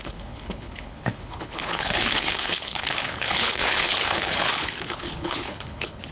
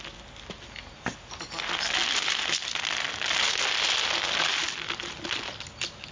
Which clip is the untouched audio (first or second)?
second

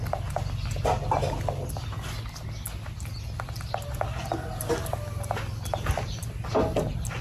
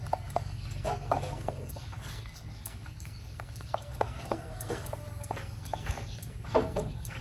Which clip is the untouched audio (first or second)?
first